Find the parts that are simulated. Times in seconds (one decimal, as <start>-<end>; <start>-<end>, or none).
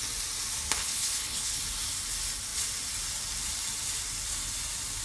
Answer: 0.8-1.6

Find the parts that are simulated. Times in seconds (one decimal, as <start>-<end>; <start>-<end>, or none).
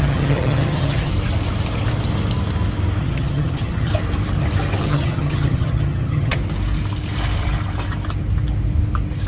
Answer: 0.0-1.1; 3.0-3.9; 4.8-6.4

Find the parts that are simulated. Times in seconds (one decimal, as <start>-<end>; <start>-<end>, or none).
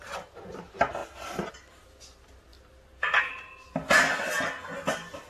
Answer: 1.0-1.5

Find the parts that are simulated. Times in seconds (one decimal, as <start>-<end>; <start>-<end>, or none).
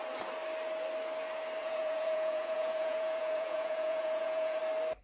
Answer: 1.6-4.6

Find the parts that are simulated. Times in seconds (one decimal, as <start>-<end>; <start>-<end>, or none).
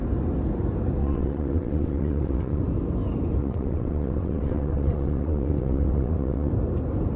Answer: 1.0-2.6; 3.4-6.5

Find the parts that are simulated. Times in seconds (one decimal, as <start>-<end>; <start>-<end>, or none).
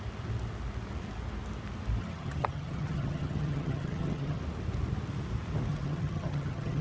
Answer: 2.0-4.4; 5.7-6.8